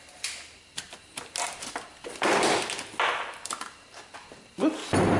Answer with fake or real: real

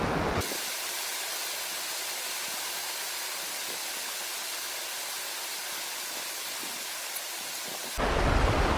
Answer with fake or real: real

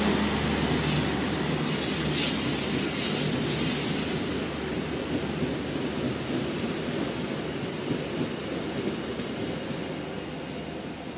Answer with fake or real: real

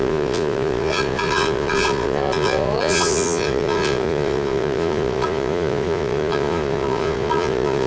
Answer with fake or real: fake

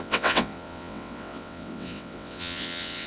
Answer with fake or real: fake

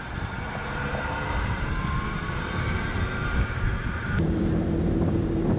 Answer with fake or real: fake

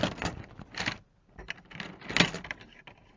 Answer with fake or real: real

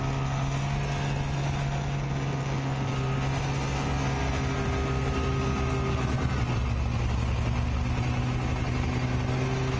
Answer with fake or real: real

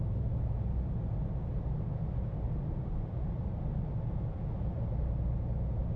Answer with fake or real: real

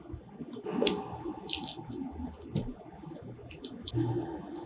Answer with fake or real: real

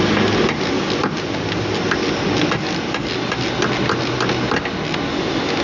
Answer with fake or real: real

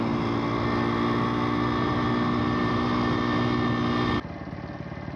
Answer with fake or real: real